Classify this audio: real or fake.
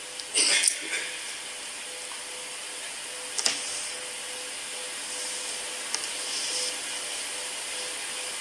real